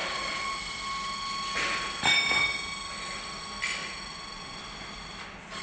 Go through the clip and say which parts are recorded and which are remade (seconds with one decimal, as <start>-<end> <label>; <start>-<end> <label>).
0.0-3.8 recorded; 3.8-4.6 remade; 4.6-5.6 recorded